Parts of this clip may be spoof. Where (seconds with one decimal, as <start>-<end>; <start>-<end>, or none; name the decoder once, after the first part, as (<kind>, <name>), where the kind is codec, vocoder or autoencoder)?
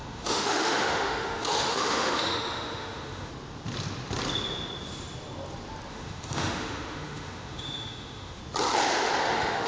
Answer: 0.0-3.3 (autoencoder, DAC-VAE); 5.9-8.4; 9.2-9.7